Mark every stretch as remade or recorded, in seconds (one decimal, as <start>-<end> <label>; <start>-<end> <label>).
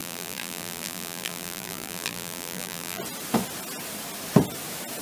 0.0-3.0 remade; 3.0-5.0 recorded